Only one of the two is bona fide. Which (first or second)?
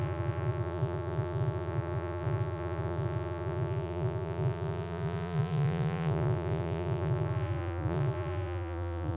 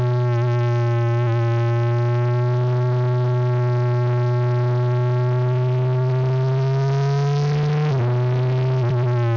second